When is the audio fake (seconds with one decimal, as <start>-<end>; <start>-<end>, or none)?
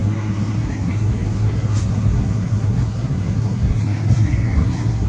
0.0-5.1